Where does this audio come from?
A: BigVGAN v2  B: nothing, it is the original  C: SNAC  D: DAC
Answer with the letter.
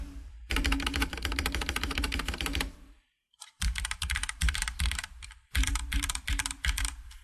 A